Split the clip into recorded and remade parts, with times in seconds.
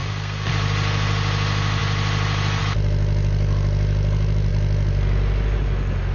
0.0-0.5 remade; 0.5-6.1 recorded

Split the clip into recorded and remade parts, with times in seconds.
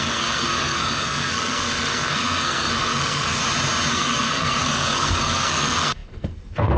0.0-3.4 remade; 3.4-3.9 recorded; 3.9-6.8 remade